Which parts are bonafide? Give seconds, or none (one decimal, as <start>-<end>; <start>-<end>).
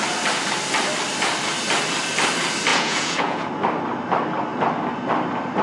0.0-2.7; 3.5-5.6